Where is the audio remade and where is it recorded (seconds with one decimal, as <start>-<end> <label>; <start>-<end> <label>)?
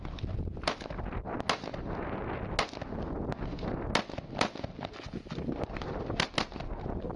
0.0-7.2 recorded